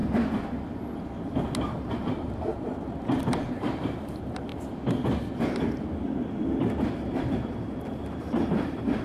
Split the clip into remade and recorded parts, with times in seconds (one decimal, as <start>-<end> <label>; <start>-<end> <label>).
0.0-1.9 recorded; 1.9-4.5 remade; 4.5-7.3 recorded; 7.3-9.0 remade